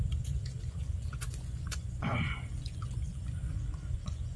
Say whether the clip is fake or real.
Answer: fake